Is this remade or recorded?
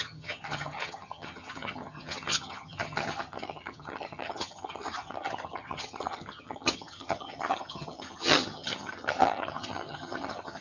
remade